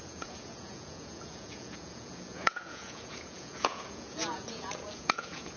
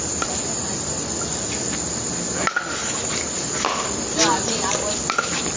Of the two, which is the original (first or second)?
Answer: second